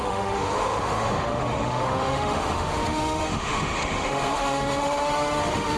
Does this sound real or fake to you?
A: fake